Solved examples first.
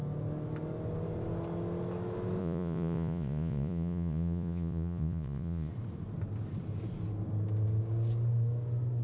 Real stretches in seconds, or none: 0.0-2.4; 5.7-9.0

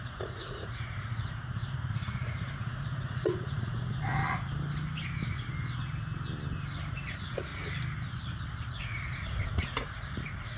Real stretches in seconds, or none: 4.2-6.9; 7.5-8.7